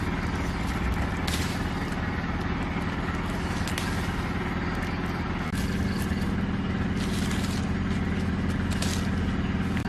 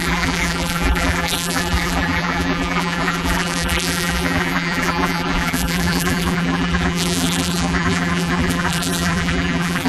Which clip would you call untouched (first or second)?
first